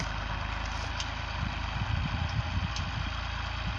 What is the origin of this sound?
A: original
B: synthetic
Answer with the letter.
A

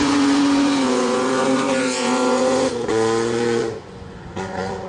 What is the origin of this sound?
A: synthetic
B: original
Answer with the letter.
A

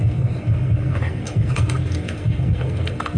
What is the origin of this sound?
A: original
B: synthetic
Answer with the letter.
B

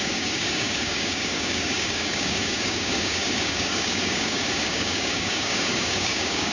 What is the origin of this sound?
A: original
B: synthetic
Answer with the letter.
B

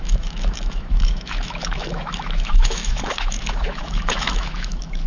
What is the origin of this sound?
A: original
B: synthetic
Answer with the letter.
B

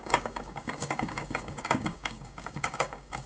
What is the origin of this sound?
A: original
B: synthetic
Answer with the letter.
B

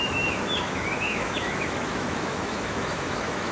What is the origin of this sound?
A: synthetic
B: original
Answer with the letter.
A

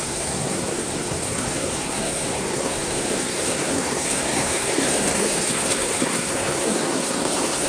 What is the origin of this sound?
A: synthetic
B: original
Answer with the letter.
A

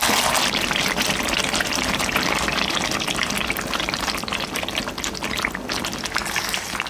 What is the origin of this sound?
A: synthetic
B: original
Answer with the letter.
B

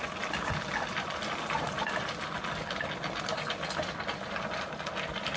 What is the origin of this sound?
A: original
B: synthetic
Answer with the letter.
A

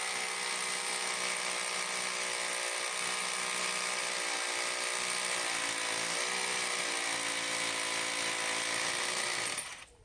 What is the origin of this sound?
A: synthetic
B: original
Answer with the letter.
B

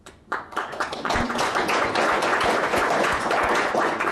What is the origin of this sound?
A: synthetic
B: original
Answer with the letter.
A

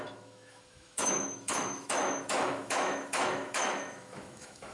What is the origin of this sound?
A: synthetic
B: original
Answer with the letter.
A